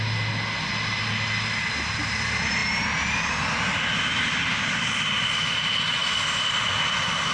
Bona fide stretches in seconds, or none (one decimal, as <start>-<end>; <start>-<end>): 0.0-7.3